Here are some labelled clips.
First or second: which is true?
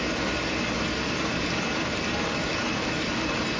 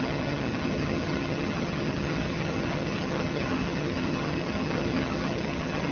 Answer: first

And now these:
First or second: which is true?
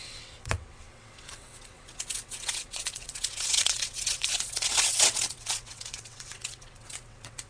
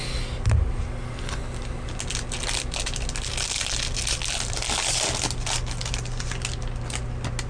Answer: second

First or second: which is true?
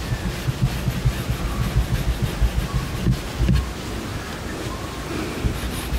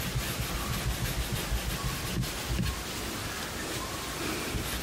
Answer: first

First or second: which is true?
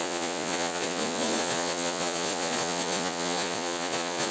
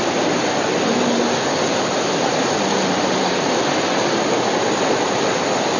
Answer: second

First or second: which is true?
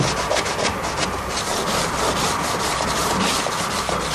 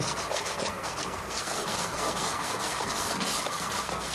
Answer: first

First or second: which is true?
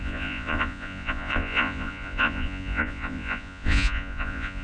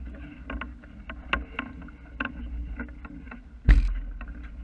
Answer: second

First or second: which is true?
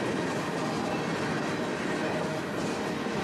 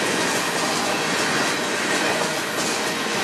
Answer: first